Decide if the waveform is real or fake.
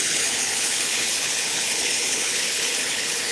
fake